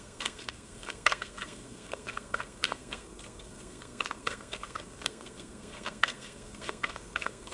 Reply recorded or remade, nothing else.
remade